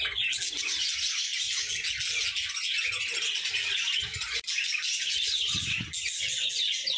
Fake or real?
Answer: real